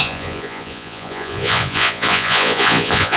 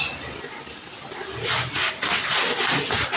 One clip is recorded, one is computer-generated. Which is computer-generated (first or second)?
first